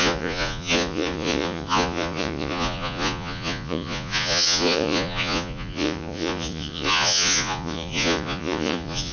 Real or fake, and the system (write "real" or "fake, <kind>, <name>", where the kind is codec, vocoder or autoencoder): fake, vocoder, Vocos